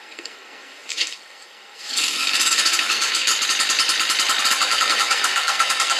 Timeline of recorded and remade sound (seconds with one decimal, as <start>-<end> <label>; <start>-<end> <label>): 0.0-3.3 remade; 3.3-4.5 recorded; 4.5-6.0 remade